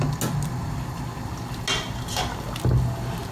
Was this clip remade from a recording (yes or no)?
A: no